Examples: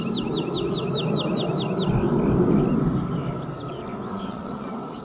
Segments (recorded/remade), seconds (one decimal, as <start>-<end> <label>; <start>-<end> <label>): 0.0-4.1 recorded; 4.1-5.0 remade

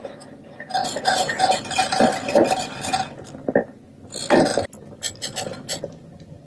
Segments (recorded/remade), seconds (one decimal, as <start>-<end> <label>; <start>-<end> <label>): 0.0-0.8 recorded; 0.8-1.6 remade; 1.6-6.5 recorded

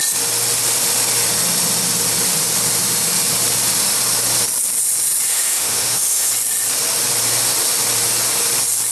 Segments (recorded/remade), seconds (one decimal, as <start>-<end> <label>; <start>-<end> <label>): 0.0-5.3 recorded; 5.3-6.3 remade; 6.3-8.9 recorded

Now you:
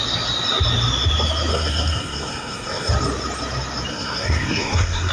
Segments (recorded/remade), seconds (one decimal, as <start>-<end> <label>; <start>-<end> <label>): 0.0-1.5 recorded; 1.5-2.9 remade; 2.9-3.9 recorded; 3.9-5.1 remade

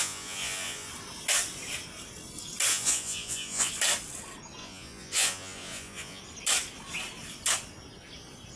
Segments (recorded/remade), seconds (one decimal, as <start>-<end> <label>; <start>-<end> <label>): 0.0-0.9 remade; 0.9-2.7 recorded; 2.7-3.7 remade; 3.7-4.6 recorded; 4.6-6.2 remade; 6.2-8.6 recorded

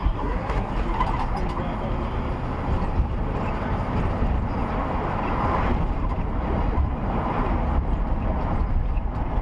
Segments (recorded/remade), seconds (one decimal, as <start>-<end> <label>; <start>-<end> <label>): 0.0-0.7 remade; 0.7-9.4 recorded

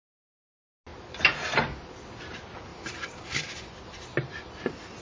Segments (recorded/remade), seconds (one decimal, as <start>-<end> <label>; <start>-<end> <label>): 0.0-2.7 recorded; 2.7-5.0 remade